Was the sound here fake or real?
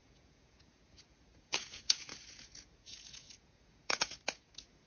fake